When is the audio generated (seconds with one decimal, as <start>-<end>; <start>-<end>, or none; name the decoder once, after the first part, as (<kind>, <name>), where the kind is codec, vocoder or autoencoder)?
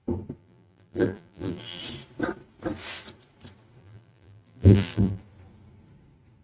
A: 0.4-1.8 (vocoder, BigVGAN v2); 3.8-5.2